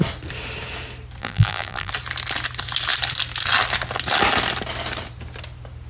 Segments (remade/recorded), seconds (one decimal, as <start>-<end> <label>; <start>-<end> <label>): 0.0-1.2 recorded; 1.2-1.9 remade; 1.9-5.9 recorded